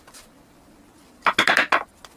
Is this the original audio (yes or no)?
yes